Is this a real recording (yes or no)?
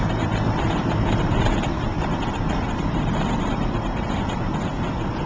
no